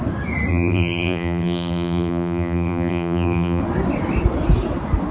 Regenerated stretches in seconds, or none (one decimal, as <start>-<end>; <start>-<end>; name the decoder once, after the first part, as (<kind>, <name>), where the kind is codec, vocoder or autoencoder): 0.5-3.6 (vocoder, BigVGAN v2)